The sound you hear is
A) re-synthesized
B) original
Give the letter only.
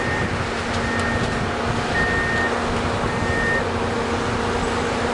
B